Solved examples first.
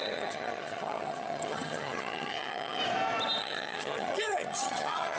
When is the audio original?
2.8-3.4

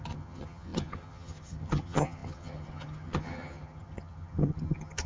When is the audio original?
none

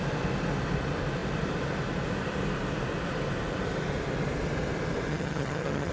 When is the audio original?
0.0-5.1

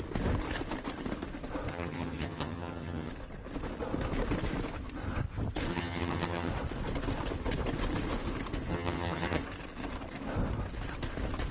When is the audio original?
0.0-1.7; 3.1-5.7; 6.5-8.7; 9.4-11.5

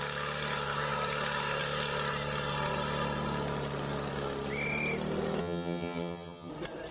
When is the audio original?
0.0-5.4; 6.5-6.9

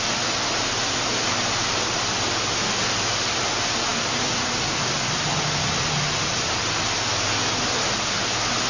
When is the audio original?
0.0-8.7

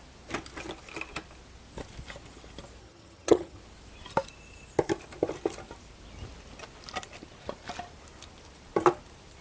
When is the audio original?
0.0-2.8; 3.6-9.4

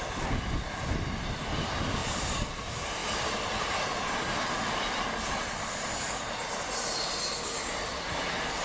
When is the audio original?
0.0-8.6